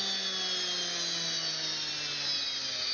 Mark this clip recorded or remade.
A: recorded